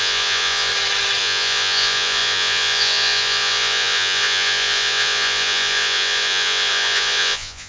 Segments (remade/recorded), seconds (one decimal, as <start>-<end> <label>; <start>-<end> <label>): 0.0-0.7 remade; 0.7-1.2 recorded; 1.2-7.7 remade